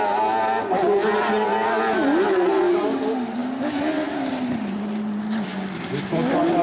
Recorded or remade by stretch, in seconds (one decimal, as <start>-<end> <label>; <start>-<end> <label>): 0.0-6.6 recorded